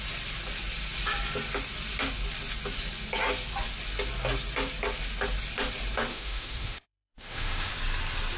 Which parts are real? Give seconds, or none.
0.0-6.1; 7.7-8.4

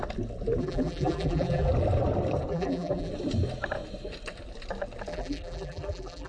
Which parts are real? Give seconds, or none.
0.0-0.6; 1.7-2.5; 3.1-5.1

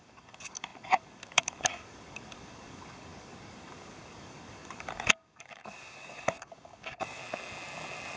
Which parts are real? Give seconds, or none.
7.2-8.2

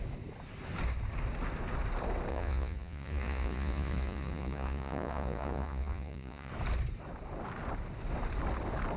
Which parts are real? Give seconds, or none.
0.0-2.3; 6.5-9.0

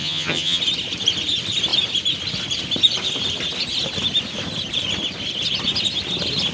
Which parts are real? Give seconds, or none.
0.6-6.5

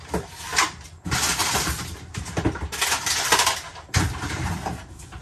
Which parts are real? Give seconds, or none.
0.0-3.7; 4.5-5.2

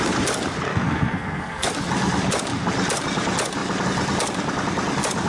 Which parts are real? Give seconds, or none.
0.0-0.7; 1.7-5.3